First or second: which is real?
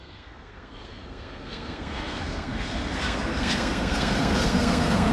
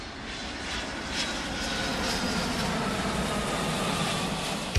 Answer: second